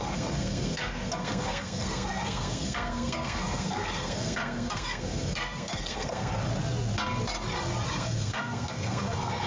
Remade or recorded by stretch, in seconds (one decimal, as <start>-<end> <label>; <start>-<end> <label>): 0.0-6.4 remade; 6.4-7.9 recorded; 7.9-9.5 remade